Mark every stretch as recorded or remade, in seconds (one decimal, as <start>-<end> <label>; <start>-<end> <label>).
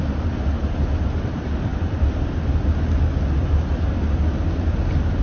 0.0-5.2 recorded